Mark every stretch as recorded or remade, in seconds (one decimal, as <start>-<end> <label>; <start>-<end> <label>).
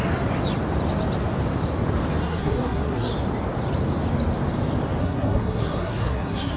0.0-2.2 recorded; 2.2-3.1 remade; 3.1-5.0 recorded; 5.0-6.6 remade